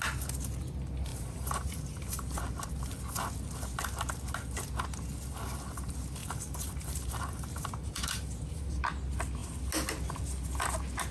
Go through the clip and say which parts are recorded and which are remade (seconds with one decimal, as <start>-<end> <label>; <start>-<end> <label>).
0.0-1.1 recorded; 1.1-2.4 remade; 2.4-6.2 recorded; 6.2-8.8 remade; 8.8-11.1 recorded

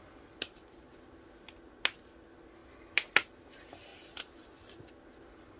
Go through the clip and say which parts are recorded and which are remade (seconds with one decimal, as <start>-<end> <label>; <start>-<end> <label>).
0.0-5.6 recorded